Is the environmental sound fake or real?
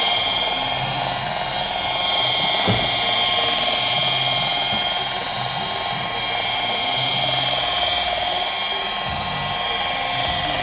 real